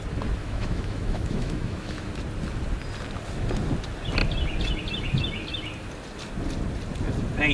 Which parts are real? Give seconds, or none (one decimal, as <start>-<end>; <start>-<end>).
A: 0.0-0.4; 2.1-7.5

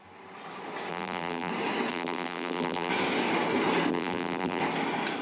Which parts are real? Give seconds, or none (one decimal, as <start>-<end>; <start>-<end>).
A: 0.0-0.9; 1.5-1.9; 2.9-3.9; 4.6-5.2